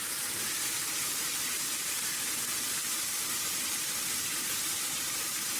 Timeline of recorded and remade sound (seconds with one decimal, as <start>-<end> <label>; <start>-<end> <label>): 0.0-2.0 remade; 2.0-3.0 recorded; 3.0-5.6 remade